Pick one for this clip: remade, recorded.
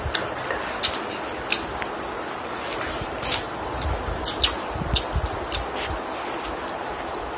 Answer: recorded